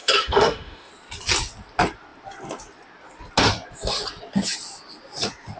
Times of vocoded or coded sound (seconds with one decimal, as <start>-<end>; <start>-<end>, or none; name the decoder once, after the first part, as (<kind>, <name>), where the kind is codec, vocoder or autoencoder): 0.0-0.9 (autoencoder, DAC-VAE)

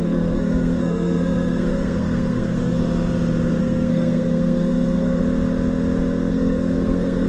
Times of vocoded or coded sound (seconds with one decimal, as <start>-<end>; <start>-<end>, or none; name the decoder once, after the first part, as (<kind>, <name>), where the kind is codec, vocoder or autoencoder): 0.0-2.8 (codec, SNAC); 3.6-5.2; 6.3-7.3

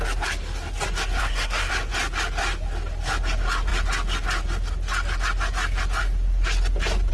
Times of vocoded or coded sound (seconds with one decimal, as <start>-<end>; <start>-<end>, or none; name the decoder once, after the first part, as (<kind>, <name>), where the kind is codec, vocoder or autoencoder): 1.2-1.7 (codec, SNAC)

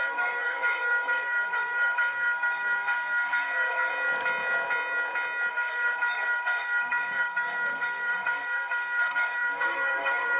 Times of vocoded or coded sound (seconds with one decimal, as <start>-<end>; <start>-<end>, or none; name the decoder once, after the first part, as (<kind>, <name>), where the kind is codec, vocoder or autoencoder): 0.0-3.9 (codec, SNAC); 5.5-10.4

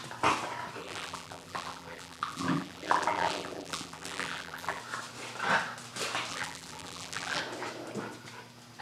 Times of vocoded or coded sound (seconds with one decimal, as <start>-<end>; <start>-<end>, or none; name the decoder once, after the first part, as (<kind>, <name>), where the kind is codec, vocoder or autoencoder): 0.8-4.8 (vocoder, BigVGAN v2); 6.3-7.4

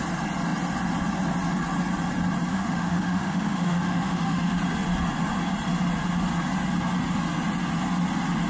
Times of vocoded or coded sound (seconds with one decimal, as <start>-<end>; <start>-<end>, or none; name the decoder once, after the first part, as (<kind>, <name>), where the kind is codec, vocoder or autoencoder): 2.5-4.6 (autoencoder, DAC-VAE)

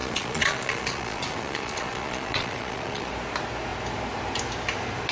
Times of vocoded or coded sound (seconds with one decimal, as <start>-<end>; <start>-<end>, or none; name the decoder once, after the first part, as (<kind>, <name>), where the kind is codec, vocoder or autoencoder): 0.0-3.1 (vocoder, Vocos)

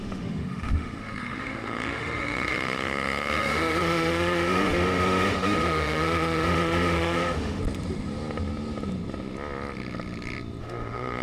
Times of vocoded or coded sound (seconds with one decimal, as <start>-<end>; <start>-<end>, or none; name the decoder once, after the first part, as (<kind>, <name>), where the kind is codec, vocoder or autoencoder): 0.0-7.6 (autoencoder, DAC-VAE); 10.6-11.2